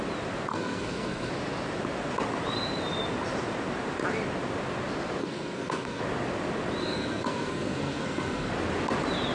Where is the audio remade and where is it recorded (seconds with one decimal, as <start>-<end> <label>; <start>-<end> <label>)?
0.0-0.5 recorded; 0.5-1.3 remade; 1.3-5.2 recorded; 5.2-6.0 remade; 6.0-6.8 recorded; 6.8-8.5 remade; 8.5-9.3 recorded